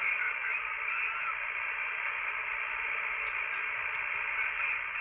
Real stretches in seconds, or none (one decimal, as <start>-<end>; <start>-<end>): 0.0-5.0